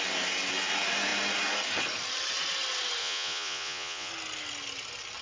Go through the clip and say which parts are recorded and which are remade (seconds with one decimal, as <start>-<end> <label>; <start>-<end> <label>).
0.0-3.0 recorded; 3.0-4.1 remade; 4.1-5.2 recorded